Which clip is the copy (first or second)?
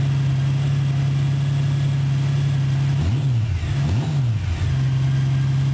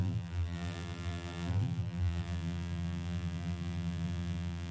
second